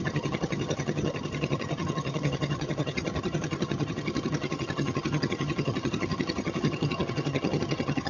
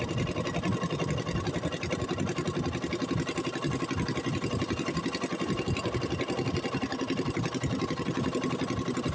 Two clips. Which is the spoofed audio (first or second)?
first